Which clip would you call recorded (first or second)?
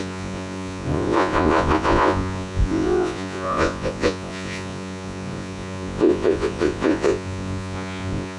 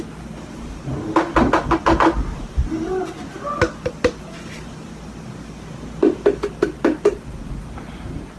second